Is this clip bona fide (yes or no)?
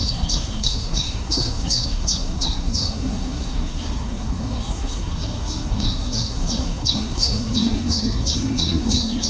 no